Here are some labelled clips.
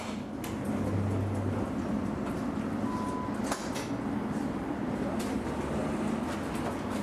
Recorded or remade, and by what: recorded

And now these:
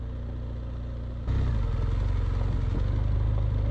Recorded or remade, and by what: recorded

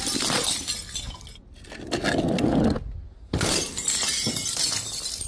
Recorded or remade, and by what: recorded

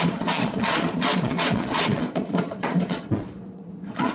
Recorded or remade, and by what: remade, vocoder, Vocos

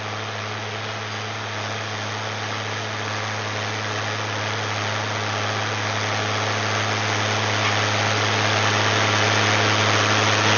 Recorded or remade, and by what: recorded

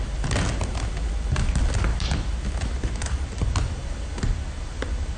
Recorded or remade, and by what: recorded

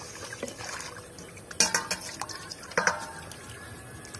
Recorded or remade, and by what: recorded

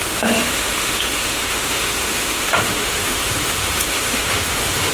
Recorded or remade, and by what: remade, autoencoder, DAC-VAE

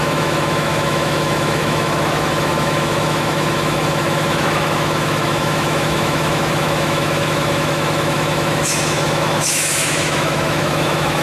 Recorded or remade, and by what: remade, autoencoder, DAC-VAE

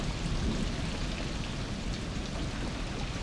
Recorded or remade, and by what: recorded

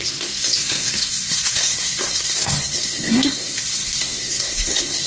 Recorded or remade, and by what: remade, codec, SNAC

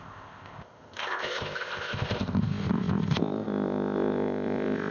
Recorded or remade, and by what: remade, codec, ZipCodec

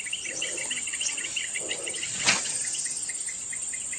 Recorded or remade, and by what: recorded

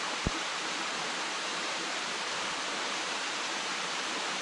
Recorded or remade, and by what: remade, vocoder, BigVGAN v2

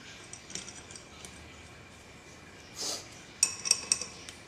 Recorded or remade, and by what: recorded